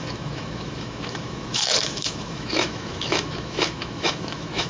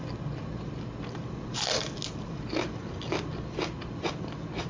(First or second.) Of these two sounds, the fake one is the first